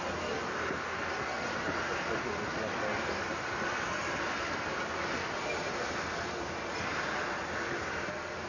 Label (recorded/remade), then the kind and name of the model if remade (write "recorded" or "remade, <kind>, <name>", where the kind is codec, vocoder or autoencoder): recorded